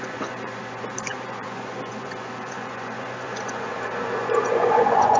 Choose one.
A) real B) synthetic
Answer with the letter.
B